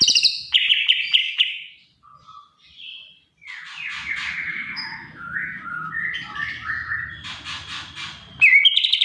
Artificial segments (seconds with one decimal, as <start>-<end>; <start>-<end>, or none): 1.2-1.7; 4.5-5.9